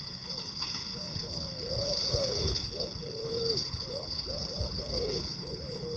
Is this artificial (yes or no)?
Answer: yes